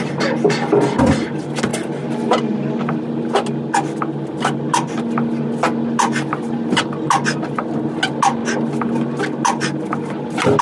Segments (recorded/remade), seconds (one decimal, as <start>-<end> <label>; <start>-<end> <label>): 0.0-10.6 recorded